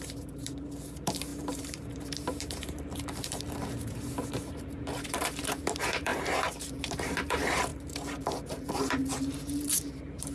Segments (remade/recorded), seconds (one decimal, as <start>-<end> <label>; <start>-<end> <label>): 0.0-10.3 remade